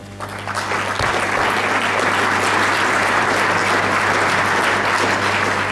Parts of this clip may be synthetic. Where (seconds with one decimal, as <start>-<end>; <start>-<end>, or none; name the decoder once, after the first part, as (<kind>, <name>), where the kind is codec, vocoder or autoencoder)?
none